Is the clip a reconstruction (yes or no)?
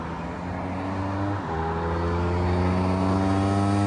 no